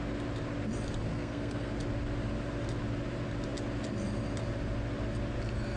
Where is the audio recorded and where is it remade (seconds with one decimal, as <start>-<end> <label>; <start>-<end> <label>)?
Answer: 0.0-1.1 recorded; 1.1-1.7 remade; 1.7-5.8 recorded